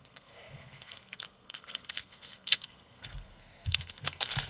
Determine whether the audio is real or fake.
fake